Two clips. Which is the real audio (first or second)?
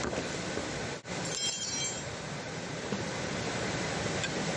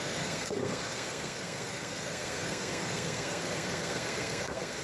first